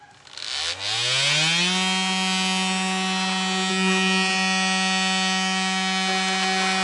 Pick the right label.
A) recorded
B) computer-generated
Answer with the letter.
A